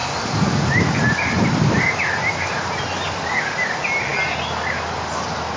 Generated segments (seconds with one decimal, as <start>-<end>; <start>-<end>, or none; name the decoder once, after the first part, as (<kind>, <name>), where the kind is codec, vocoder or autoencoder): none